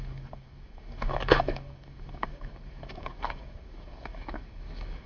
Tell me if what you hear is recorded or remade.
remade